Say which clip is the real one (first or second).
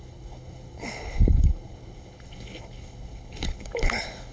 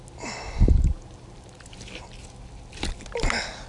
second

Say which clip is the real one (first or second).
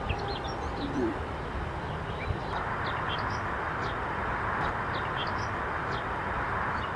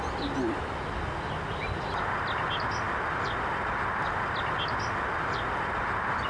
second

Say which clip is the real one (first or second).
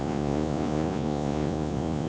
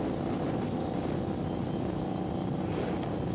second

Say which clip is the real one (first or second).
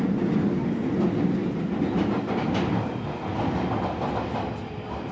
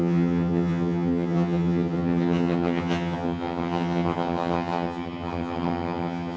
first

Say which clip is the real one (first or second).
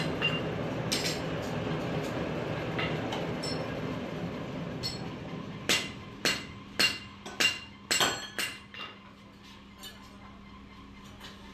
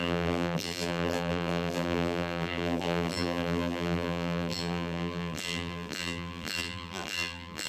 first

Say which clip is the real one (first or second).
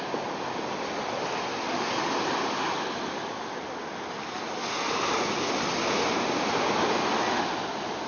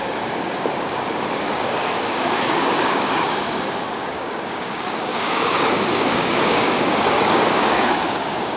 first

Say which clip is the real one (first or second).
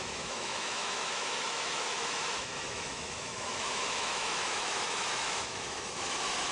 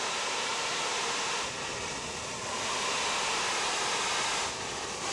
second